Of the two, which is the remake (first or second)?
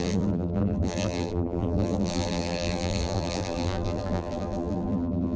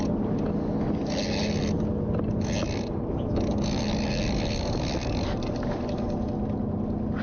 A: first